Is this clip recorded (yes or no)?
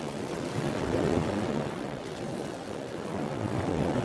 no